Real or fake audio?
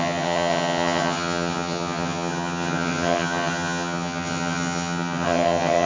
fake